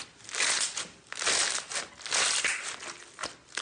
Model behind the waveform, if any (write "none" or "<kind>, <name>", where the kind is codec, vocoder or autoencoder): none